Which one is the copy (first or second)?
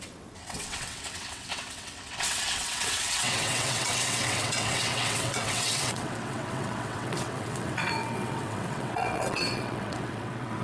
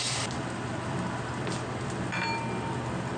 first